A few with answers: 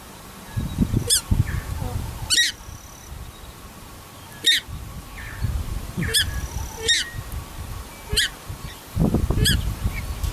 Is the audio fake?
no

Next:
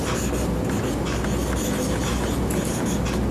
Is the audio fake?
no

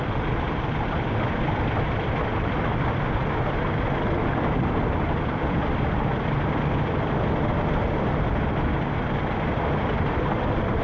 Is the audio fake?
yes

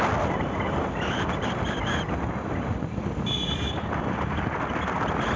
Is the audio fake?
no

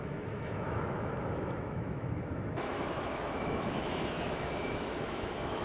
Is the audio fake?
yes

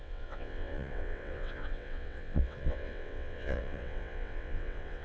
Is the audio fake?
yes